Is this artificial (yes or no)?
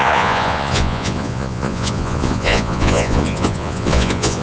yes